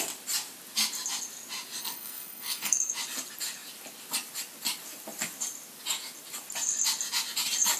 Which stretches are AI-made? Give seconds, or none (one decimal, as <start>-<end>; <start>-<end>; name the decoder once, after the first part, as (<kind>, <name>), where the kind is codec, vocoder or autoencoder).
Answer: 1.8-2.9 (codec, SNAC)